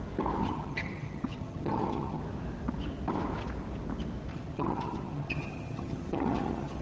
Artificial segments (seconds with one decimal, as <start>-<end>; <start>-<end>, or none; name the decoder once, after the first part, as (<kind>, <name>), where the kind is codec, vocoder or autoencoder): 0.4-2.2 (vocoder, HiFi-GAN); 4.3-6.8